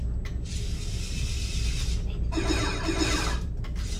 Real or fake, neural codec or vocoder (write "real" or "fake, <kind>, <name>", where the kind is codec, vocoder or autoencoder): real